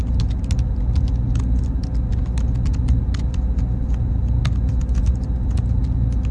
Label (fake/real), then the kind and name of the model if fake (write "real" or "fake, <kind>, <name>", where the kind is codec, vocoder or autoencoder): real